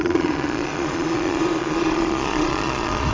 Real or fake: fake